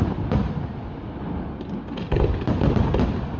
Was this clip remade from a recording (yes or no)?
no